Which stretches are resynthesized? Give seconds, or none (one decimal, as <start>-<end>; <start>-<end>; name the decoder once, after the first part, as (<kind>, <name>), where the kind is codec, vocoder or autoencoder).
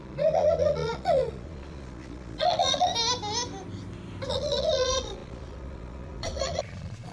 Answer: 0.0-2.9 (vocoder, Vocos); 4.3-7.1